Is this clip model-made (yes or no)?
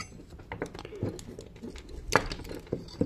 no